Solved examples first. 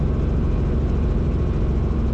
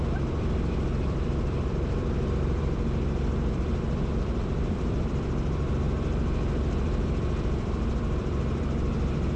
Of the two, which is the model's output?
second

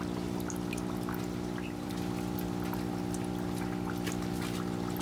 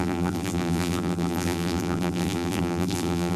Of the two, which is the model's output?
second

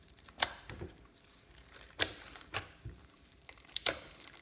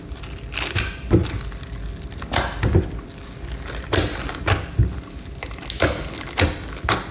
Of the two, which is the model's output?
first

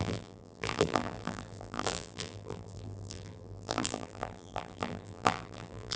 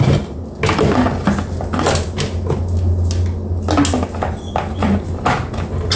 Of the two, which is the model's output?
first